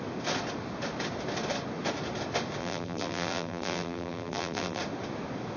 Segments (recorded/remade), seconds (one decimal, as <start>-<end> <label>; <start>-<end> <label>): 0.0-2.6 recorded; 2.6-4.8 remade; 4.8-5.6 recorded